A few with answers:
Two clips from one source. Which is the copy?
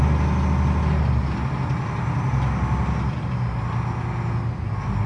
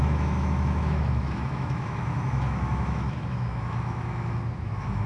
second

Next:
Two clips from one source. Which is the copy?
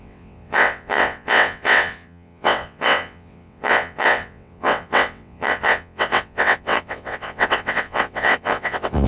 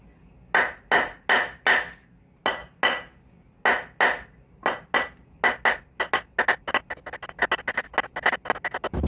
first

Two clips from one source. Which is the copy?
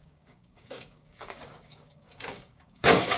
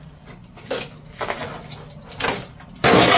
first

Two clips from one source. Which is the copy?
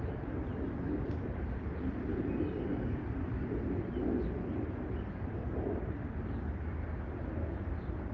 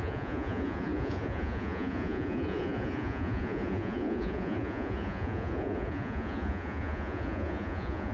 second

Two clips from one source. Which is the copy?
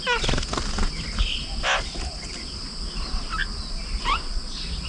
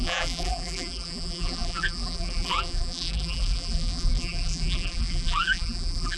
second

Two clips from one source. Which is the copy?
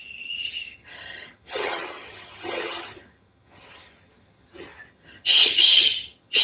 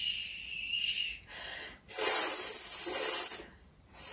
first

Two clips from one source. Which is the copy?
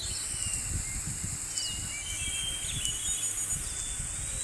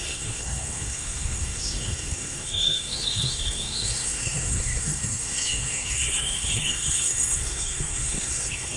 second